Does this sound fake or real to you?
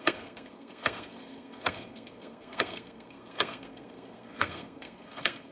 fake